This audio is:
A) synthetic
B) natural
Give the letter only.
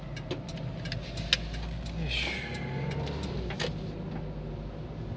B